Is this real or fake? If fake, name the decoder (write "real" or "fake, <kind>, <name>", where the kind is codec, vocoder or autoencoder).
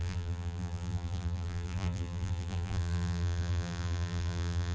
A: fake, vocoder, BigVGAN v2